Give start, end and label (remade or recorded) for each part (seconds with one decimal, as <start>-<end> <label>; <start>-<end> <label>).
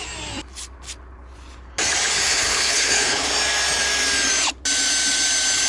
0.0-2.3 recorded; 2.3-3.3 remade; 3.3-5.7 recorded